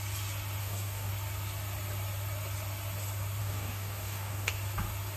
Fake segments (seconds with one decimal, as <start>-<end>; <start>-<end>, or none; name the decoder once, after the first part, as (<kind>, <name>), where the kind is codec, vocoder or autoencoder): 0.6-1.1 (codec, DAC); 3.4-4.5